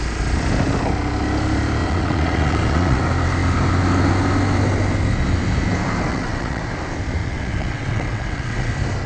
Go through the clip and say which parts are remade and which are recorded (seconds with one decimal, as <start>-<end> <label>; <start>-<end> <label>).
0.0-1.8 recorded; 1.8-3.0 remade; 3.0-6.1 recorded; 6.1-6.6 remade; 6.6-7.2 recorded; 7.2-8.7 remade; 8.7-9.1 recorded